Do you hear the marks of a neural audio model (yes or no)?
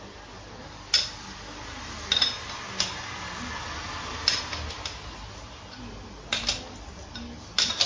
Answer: no